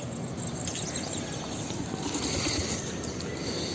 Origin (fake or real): real